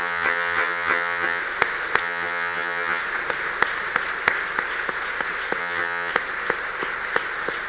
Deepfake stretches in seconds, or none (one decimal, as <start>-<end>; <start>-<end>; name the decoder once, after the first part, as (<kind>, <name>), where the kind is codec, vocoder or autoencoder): 0.0-1.4 (vocoder, HiFi-GAN); 2.0-3.0; 5.6-6.1